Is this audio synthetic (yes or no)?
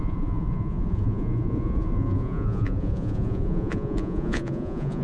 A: yes